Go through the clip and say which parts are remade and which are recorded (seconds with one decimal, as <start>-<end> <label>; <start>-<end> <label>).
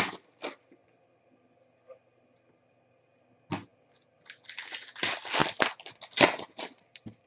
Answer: 0.0-3.7 recorded; 3.7-4.5 remade; 4.5-7.3 recorded